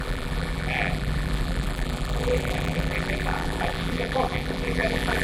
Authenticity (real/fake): fake